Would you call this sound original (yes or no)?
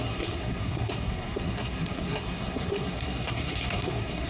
no